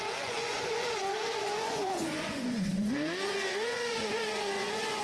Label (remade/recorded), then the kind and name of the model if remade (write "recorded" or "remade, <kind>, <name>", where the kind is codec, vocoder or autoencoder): remade, vocoder, Vocos